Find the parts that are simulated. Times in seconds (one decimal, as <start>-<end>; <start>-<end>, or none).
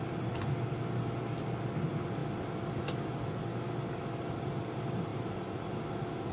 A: 5.1-5.8